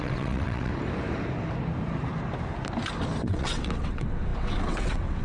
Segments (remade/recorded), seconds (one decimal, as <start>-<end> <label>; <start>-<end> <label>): 0.0-0.7 remade; 0.7-3.2 recorded; 3.2-5.2 remade